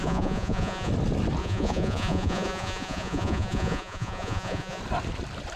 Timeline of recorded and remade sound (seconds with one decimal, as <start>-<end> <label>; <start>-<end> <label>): 0.0-0.9 remade; 0.9-1.4 recorded; 1.4-4.8 remade; 4.8-5.6 recorded